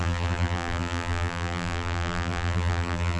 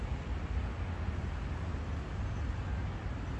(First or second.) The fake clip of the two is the first